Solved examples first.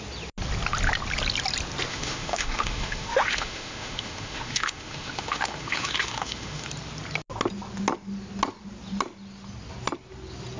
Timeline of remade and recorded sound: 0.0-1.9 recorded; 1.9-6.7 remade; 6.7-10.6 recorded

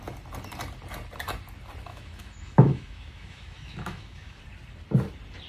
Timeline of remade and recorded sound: 0.0-1.9 recorded; 1.9-4.4 remade; 4.4-5.5 recorded

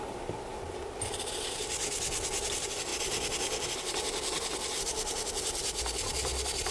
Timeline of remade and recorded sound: 0.0-6.7 recorded